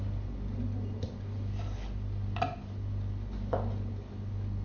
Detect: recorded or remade recorded